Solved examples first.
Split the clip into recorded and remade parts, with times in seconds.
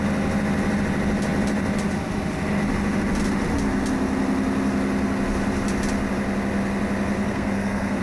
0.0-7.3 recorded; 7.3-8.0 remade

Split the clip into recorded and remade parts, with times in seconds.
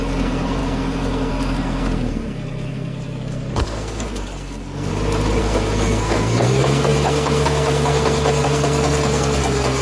0.0-4.9 remade; 4.9-5.4 recorded; 5.4-9.8 remade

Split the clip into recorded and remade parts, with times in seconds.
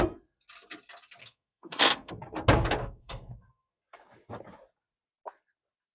0.0-1.2 recorded; 1.2-2.1 remade; 2.1-2.8 recorded; 2.8-3.8 remade; 3.8-5.9 recorded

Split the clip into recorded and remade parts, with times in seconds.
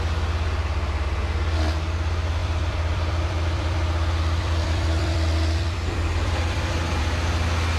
0.0-2.4 recorded; 2.4-7.0 remade; 7.0-7.8 recorded